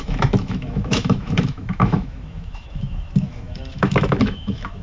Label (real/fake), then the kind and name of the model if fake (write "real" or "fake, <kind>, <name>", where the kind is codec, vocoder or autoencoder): fake, autoencoder, DAC-VAE